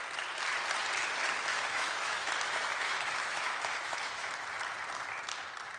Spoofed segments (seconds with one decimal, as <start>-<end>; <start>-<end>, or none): 1.5-4.3